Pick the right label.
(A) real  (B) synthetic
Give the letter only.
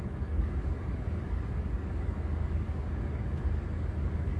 B